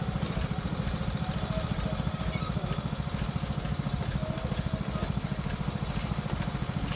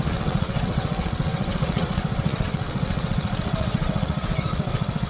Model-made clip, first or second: second